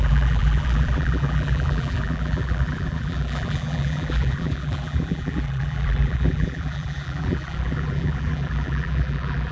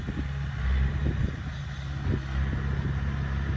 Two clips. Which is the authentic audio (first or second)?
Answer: second